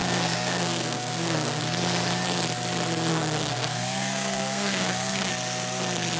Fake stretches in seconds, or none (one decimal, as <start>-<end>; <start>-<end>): 0.0-1.6; 3.1-5.3